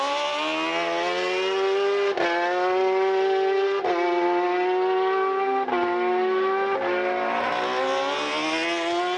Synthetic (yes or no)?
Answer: no